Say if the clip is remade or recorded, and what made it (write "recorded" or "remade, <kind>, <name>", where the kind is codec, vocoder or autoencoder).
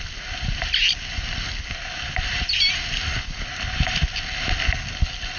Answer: recorded